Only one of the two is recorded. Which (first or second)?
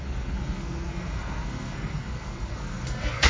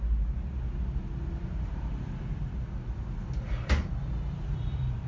second